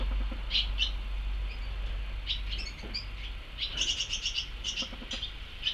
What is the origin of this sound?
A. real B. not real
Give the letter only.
A